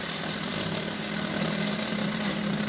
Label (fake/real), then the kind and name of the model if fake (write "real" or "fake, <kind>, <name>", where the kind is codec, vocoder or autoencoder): real